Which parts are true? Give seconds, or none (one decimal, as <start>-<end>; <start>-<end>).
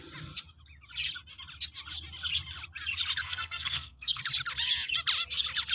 0.0-3.2; 4.2-5.7